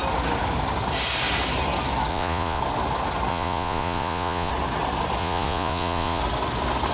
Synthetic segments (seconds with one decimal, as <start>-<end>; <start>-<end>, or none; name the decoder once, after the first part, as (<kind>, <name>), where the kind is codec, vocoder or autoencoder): 2.1-2.6 (vocoder, Vocos); 3.3-4.5; 5.2-6.2